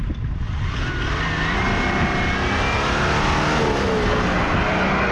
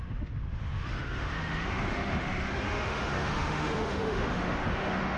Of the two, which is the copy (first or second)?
second